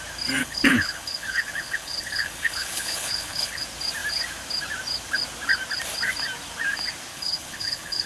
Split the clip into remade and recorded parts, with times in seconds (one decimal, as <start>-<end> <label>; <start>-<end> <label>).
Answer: 0.0-0.4 recorded; 0.4-3.6 remade; 3.6-7.1 recorded; 7.1-8.1 remade